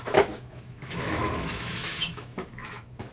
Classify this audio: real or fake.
fake